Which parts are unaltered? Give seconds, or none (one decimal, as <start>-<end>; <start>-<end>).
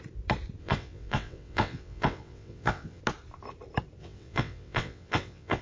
0.0-0.6; 3.0-4.0